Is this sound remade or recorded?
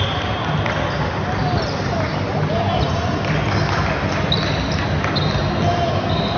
recorded